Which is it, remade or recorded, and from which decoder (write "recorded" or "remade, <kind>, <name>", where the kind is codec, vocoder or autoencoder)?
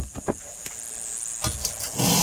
recorded